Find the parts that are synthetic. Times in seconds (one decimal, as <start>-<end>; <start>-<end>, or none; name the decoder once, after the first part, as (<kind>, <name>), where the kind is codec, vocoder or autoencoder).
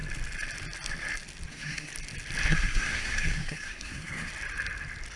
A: 1.5-1.9 (codec, SNAC); 2.5-4.3